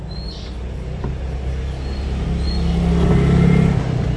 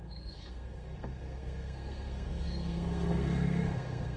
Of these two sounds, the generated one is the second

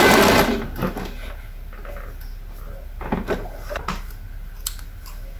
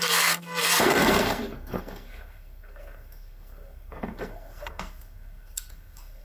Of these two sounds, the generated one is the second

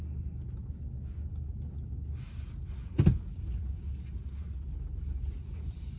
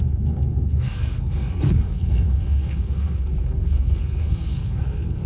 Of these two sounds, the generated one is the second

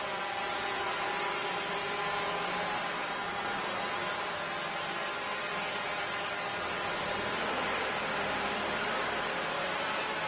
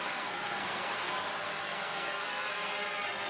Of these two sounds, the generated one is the second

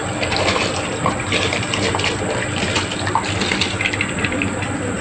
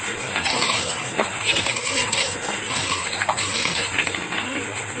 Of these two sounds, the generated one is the second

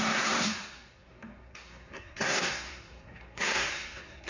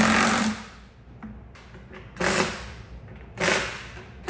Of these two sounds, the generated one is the first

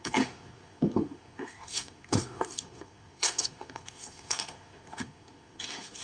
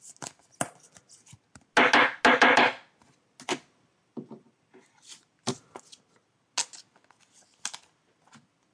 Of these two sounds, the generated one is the first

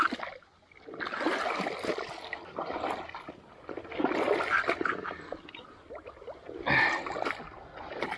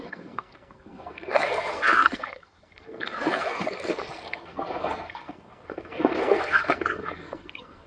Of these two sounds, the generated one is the second